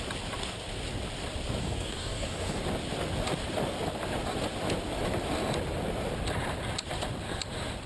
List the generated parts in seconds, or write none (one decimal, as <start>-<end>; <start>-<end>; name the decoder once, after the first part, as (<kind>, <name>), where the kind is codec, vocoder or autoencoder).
1.6-2.6 (codec, DAC)